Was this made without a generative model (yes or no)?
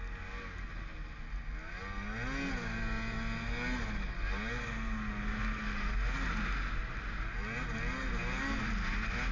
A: yes